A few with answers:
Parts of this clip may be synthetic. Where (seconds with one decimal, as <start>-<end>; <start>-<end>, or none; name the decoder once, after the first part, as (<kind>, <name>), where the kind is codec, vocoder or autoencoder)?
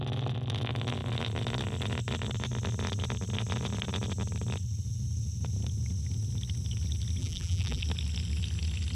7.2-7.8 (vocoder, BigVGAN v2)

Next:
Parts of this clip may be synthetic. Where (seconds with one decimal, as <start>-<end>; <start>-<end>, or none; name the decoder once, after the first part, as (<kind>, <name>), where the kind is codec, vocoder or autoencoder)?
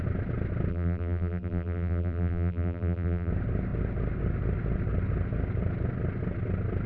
0.7-3.3 (vocoder, BigVGAN v2)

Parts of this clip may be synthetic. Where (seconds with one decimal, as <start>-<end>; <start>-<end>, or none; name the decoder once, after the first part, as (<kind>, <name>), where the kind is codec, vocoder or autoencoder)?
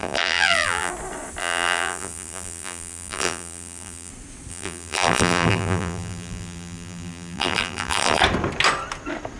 0.0-0.9 (vocoder, BigVGAN v2); 1.4-4.1; 4.5-8.2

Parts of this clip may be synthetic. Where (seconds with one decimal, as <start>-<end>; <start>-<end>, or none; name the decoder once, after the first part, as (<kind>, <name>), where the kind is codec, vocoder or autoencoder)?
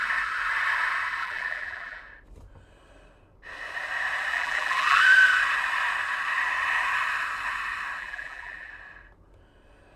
1.2-2.0 (vocoder, BigVGAN v2); 4.3-5.0; 8.0-8.7